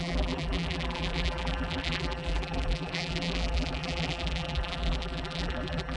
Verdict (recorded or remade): remade